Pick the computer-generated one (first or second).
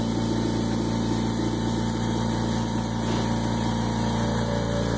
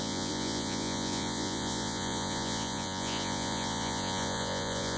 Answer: second